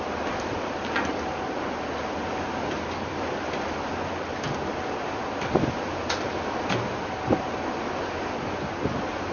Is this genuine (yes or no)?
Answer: yes